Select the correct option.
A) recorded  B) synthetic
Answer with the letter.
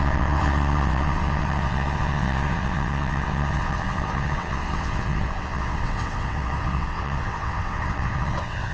B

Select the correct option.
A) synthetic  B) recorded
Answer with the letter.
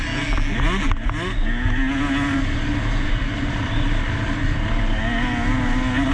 B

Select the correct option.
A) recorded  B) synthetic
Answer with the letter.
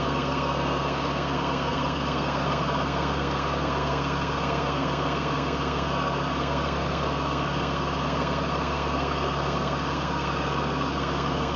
B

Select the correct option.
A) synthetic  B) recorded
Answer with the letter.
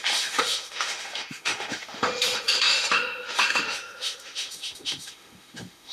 A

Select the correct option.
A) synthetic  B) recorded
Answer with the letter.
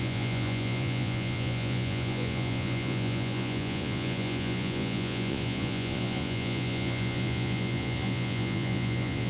A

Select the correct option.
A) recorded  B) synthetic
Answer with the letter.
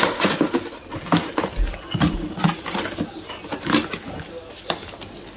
A